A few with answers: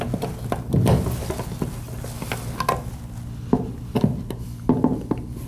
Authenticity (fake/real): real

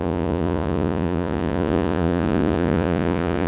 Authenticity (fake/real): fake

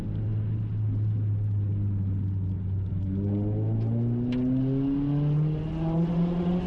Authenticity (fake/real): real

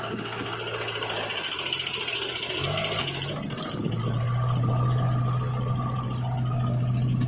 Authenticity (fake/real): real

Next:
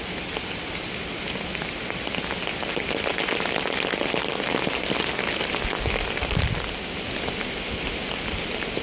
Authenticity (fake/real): real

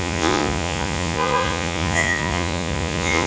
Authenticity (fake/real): fake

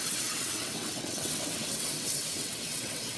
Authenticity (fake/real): fake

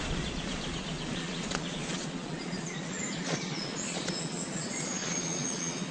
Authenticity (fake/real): fake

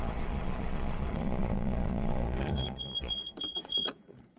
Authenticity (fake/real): fake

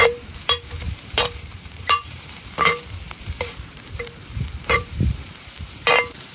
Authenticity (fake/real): fake